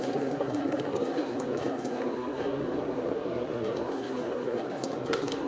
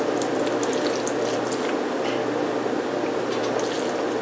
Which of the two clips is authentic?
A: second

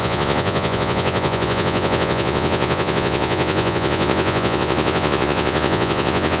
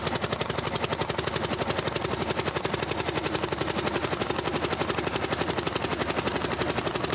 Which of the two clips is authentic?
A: second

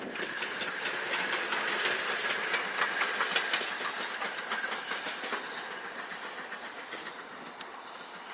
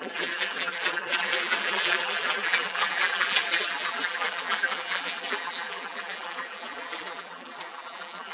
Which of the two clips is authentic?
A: first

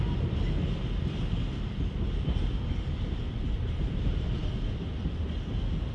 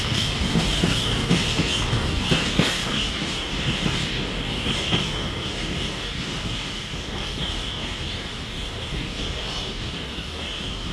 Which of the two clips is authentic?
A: first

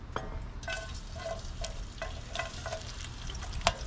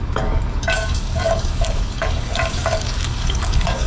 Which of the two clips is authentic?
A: first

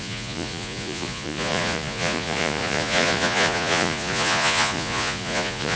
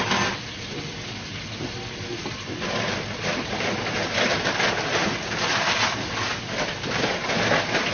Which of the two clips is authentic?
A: second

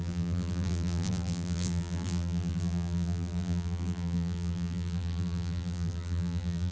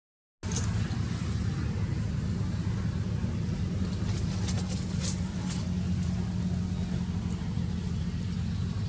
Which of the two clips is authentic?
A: second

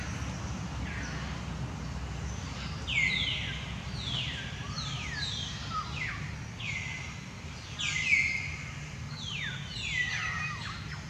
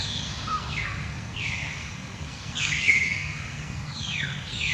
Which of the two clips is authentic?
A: first